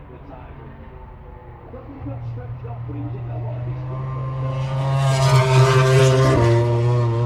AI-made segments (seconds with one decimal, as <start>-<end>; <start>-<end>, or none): 1.4-3.7; 5.4-6.0